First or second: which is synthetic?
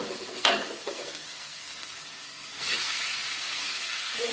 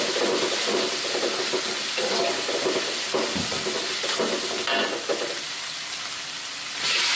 first